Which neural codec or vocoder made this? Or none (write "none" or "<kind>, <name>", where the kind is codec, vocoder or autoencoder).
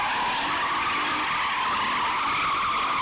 none